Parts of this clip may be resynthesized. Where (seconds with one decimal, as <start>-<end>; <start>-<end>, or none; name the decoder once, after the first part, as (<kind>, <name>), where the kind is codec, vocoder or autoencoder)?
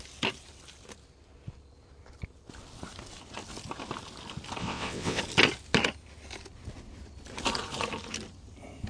4.6-5.2 (vocoder, WaveNeXt)